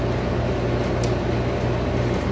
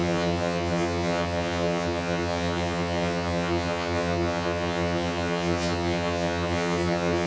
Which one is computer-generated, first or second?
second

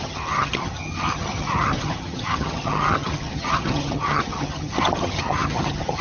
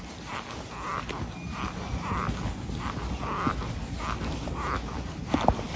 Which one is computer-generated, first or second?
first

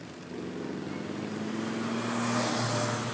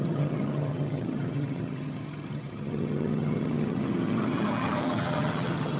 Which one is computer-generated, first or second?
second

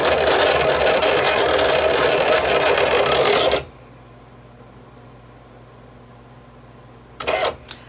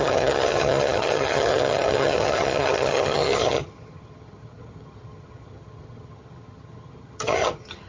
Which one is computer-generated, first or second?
second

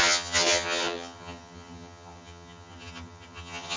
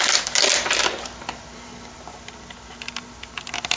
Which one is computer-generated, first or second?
first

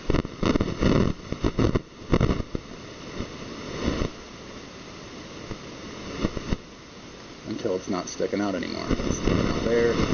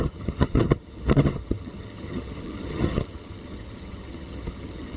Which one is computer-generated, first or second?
second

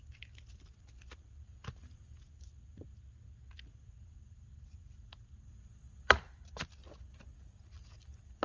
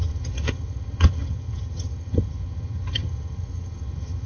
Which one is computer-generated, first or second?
second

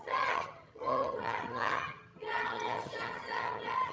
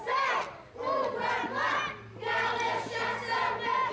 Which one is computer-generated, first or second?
first